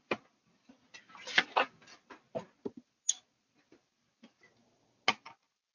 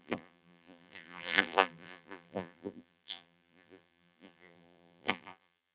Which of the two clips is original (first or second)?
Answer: first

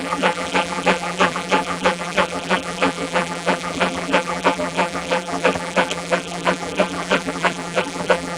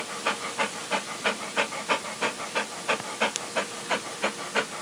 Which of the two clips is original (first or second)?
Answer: second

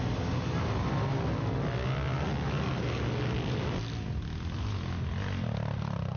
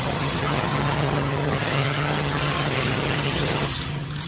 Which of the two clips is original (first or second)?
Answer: first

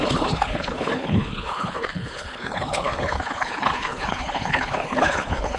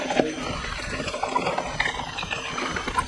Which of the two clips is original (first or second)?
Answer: second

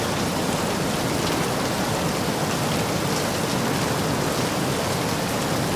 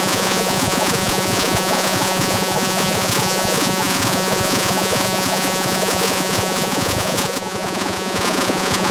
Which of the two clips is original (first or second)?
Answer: first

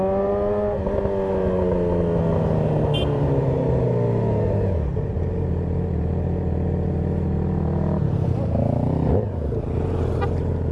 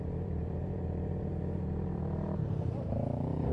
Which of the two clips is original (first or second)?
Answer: first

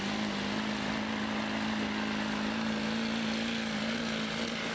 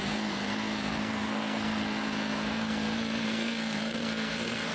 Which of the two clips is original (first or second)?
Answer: first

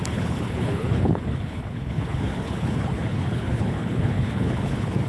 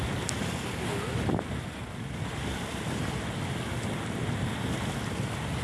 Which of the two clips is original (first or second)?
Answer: second